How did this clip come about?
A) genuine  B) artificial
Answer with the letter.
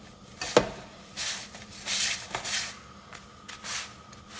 A